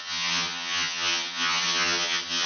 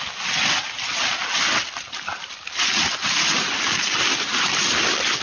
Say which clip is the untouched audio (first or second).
second